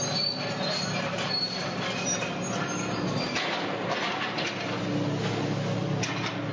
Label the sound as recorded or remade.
recorded